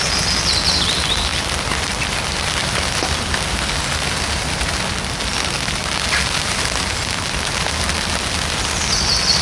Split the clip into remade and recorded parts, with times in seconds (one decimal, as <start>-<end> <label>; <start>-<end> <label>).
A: 0.0-9.4 recorded